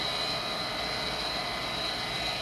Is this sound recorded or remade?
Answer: recorded